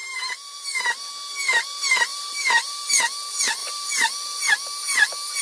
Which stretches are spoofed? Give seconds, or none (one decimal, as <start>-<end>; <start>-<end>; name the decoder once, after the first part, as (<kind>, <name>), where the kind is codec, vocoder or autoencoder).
0.0-0.8 (vocoder, BigVGAN v2); 2.1-3.0; 3.6-4.5